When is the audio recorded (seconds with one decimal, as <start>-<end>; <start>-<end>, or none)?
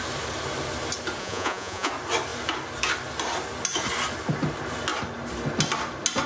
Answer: 0.0-1.2; 1.9-6.3